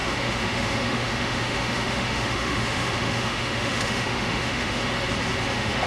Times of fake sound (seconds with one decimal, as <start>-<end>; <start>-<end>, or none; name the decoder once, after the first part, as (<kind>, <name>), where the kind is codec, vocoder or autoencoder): 0.0-4.8 (autoencoder, DAC-VAE); 5.5-5.9